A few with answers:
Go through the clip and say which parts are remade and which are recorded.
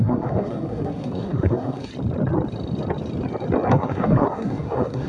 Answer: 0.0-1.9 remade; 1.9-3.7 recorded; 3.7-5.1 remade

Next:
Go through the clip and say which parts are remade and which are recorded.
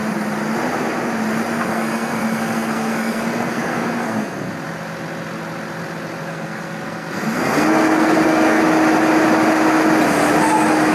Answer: 0.0-1.7 recorded; 1.7-4.5 remade; 4.5-6.3 recorded; 6.3-8.6 remade; 8.6-10.9 recorded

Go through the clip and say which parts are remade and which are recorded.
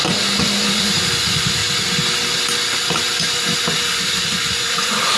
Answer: 0.0-0.7 recorded; 0.7-1.6 remade; 1.6-3.9 recorded; 3.9-5.2 remade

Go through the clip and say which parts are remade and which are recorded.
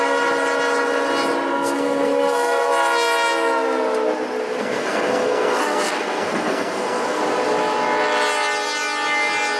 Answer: 0.0-1.5 recorded; 1.5-2.7 remade; 2.7-4.6 recorded; 4.6-7.2 remade; 7.2-9.6 recorded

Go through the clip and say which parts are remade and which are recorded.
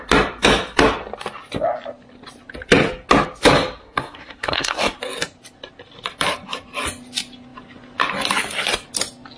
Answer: 0.0-3.8 recorded; 3.8-5.0 remade; 5.0-9.4 recorded